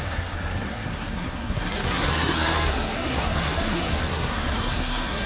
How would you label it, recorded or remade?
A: remade